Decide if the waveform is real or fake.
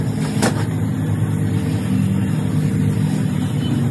real